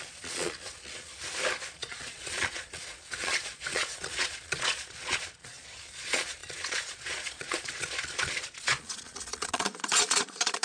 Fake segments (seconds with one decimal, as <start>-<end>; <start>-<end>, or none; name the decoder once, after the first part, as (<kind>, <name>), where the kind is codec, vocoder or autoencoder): 0.0-1.1 (vocoder, Vocos); 1.7-10.6